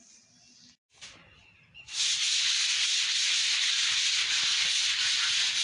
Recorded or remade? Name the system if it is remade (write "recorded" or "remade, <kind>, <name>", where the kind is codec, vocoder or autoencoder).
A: recorded